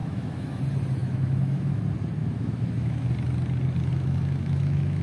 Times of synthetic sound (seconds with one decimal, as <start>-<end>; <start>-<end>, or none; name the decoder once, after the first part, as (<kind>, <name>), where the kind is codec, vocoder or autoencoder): 0.0-0.6 (autoencoder, DAC-VAE); 1.0-1.8; 2.2-3.1; 3.9-5.0